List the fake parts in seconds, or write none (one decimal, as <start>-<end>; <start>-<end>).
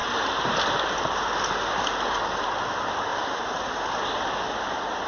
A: 2.2-5.1